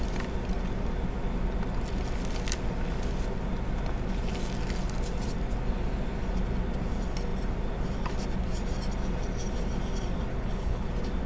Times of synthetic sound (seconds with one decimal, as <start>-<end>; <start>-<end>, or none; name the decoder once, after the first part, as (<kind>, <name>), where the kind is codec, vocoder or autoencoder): 10.3-10.9 (codec, HILCodec)

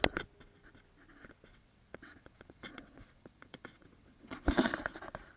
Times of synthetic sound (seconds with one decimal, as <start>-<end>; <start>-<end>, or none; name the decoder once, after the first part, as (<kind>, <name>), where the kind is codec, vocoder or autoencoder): 1.5-4.7 (vocoder, WaveNeXt)

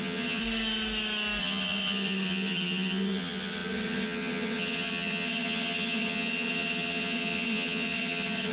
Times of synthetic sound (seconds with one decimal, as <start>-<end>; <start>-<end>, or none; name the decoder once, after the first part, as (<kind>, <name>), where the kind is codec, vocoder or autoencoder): 0.0-0.4 (vocoder, HiFi-GAN); 1.4-8.5

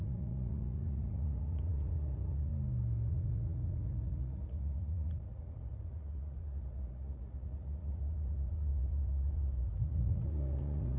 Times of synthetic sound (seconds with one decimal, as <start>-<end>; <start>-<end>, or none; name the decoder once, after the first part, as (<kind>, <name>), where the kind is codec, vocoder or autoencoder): 0.0-2.5 (vocoder, Vocos); 3.1-11.0

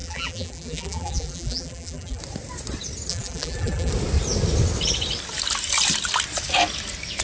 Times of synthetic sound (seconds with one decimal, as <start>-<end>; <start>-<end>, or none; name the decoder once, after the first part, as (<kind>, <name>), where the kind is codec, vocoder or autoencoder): 0.0-2.2 (vocoder, BigVGAN v2); 3.1-3.9

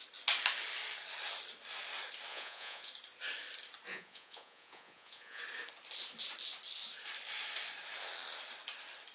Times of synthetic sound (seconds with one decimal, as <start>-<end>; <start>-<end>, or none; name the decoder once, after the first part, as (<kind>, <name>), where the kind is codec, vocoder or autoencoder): 2.3-2.9 (vocoder, Vocos); 3.9-5.4

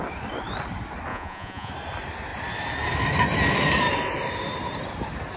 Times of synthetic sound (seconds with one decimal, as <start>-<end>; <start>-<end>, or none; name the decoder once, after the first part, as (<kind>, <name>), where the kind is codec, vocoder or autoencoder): 1.1-1.7 (vocoder, Vocos)

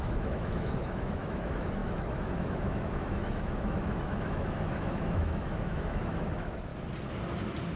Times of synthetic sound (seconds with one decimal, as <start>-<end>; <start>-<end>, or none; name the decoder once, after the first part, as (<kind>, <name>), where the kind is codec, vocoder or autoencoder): 0.0-6.7 (autoencoder, DAC-VAE)